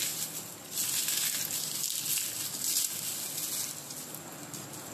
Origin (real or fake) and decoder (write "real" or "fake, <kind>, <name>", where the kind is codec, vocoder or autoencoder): real